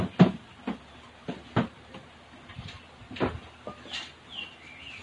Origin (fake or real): real